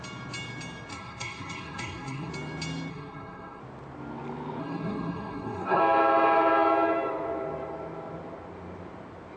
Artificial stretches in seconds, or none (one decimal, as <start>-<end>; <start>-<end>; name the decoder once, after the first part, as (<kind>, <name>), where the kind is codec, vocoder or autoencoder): 0.9-2.3 (codec, SNAC); 2.9-3.6; 4.6-5.8